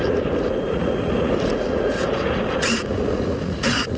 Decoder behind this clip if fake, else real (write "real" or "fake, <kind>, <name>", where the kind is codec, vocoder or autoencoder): fake, vocoder, Vocos